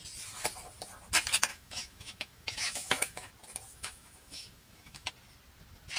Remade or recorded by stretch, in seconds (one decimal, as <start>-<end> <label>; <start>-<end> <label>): 0.0-1.5 recorded; 1.5-3.3 remade; 3.3-3.7 recorded; 3.7-5.1 remade; 5.1-6.0 recorded